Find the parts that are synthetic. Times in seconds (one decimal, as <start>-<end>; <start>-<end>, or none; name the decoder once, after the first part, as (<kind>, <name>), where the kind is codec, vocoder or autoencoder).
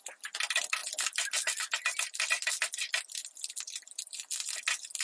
none